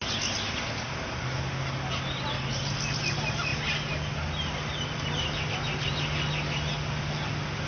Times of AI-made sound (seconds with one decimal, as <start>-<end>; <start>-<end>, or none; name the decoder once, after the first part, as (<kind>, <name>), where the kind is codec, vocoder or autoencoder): none

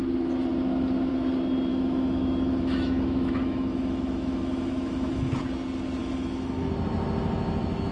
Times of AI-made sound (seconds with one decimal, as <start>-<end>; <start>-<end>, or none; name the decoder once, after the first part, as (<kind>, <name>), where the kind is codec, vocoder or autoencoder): 1.7-5.4 (autoencoder, DAC-VAE); 6.0-6.7

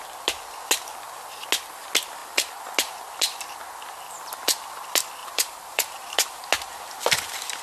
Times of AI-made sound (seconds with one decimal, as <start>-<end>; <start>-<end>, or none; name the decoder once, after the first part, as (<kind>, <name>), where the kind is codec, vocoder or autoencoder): 5.2-6.4 (vocoder, BigVGAN v2)